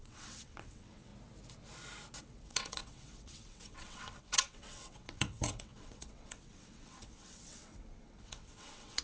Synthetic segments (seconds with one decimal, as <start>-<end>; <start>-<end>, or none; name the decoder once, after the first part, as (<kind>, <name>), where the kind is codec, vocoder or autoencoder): 0.0-1.1 (vocoder, WaveNeXt); 2.2-9.0